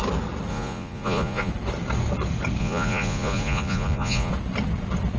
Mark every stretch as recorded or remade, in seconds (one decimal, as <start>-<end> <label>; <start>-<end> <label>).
0.0-0.5 recorded; 0.5-1.5 remade; 1.5-2.6 recorded; 2.6-4.3 remade; 4.3-5.2 recorded